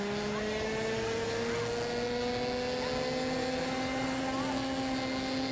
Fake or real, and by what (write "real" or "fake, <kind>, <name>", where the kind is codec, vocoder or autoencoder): real